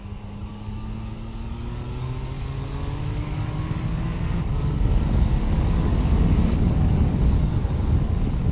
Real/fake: fake